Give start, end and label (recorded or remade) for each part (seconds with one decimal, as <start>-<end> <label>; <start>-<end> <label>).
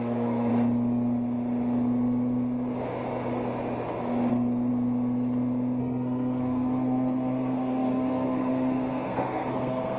0.0-0.5 remade; 0.5-4.3 recorded; 4.3-4.7 remade; 4.7-5.8 recorded; 5.8-10.0 remade